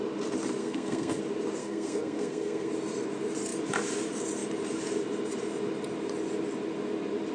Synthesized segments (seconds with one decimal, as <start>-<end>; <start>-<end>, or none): 0.6-1.2; 1.6-2.7